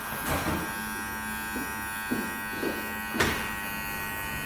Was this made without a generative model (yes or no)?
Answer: yes